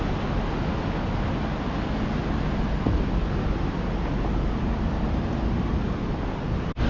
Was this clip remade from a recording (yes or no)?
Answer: no